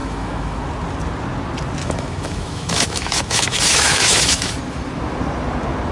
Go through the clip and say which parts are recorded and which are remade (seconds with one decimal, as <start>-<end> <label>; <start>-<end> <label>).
0.0-0.6 remade; 0.6-1.8 recorded; 1.8-4.5 remade; 4.5-5.9 recorded